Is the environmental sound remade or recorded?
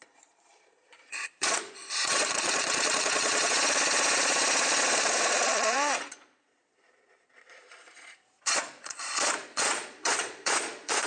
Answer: remade